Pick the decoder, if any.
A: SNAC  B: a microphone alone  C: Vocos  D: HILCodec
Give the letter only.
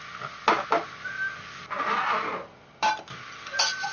B